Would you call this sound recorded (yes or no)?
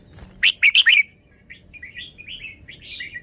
yes